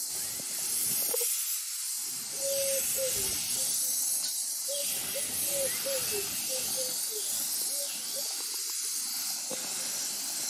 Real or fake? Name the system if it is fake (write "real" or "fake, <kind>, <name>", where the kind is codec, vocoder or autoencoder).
real